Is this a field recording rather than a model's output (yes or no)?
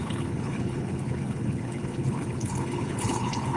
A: no